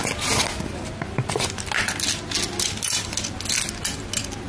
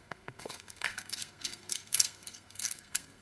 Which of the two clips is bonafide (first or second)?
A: first